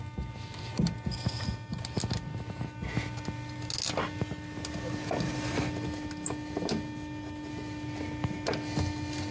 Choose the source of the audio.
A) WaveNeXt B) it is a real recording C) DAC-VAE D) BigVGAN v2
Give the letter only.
B